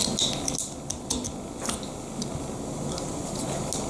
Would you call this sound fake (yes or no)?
no